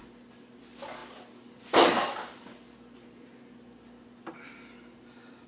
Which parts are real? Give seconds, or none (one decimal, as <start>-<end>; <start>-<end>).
0.0-5.5